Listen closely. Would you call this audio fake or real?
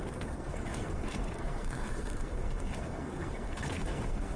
fake